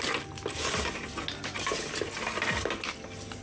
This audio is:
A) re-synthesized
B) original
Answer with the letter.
B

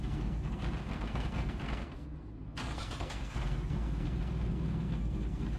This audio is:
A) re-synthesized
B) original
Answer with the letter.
A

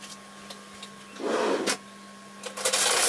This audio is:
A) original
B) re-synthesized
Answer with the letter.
A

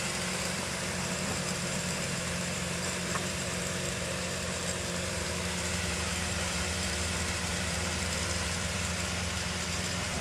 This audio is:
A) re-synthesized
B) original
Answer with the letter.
A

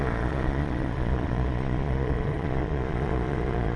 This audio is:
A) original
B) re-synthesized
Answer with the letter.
B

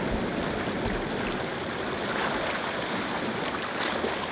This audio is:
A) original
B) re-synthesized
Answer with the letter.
A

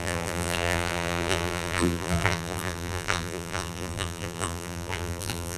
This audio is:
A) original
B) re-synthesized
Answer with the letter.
B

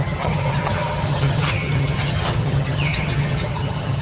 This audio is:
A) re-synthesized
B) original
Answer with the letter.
A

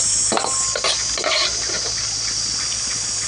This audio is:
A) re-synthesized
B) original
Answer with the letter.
B